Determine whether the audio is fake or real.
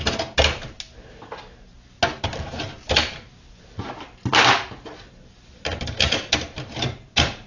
real